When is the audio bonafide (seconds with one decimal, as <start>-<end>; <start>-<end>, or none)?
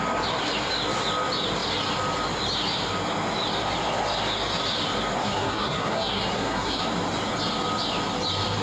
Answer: 0.0-5.2; 6.8-8.6